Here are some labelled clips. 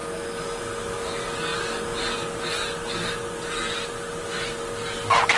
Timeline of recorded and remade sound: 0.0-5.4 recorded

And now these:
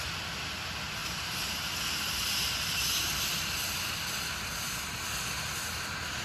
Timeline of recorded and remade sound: 0.0-1.0 recorded; 1.0-1.8 remade; 1.8-6.2 recorded

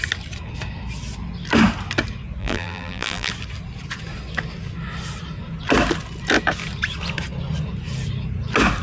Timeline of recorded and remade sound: 0.0-2.4 recorded; 2.4-3.3 remade; 3.3-8.8 recorded

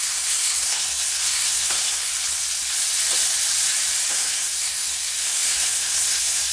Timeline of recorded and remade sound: 0.0-2.1 remade; 2.1-4.1 recorded; 4.1-6.5 remade

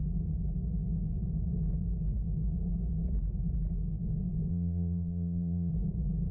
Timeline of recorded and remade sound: 0.0-4.5 recorded; 4.5-5.7 remade; 5.7-6.3 recorded

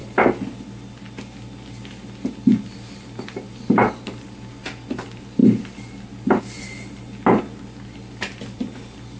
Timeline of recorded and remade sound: 0.0-9.2 recorded

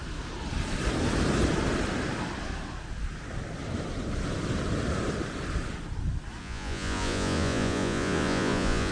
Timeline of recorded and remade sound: 0.0-6.4 recorded; 6.4-8.9 remade

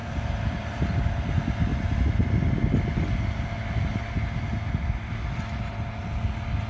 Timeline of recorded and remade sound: 0.0-1.2 remade; 1.2-6.7 recorded